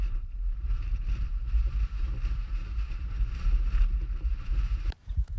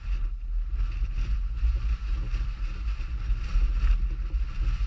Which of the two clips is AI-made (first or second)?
first